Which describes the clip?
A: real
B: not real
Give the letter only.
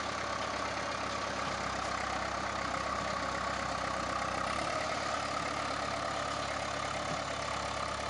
A